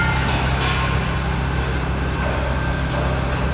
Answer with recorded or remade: recorded